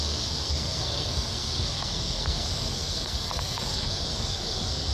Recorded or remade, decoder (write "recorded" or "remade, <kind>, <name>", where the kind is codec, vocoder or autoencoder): remade, codec, SNAC